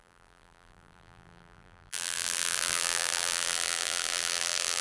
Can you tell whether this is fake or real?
fake